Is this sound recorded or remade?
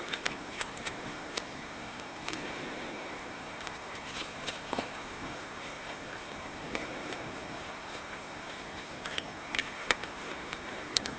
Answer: remade